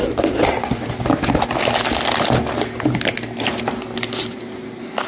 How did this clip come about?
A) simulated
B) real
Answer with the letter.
B